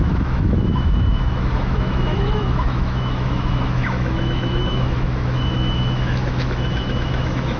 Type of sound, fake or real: fake